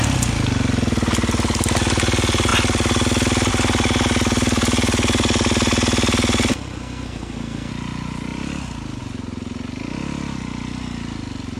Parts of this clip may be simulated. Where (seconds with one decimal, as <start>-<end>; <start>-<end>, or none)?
6.5-7.7